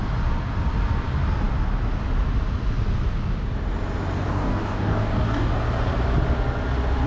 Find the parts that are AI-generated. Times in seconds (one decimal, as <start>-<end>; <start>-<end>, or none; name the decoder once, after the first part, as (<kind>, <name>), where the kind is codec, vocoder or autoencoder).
4.3-5.5 (codec, DAC)